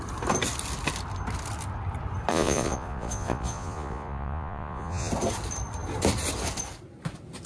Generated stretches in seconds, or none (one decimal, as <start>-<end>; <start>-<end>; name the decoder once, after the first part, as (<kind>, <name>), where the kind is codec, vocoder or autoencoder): 2.3-5.1 (vocoder, Vocos)